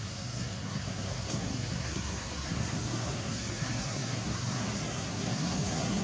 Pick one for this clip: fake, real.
fake